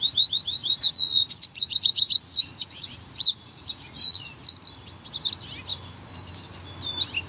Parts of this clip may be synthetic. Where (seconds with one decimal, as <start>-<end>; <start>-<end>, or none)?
0.6-4.3